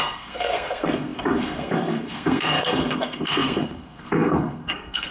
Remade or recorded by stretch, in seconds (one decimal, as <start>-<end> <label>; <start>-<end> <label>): 0.0-5.1 remade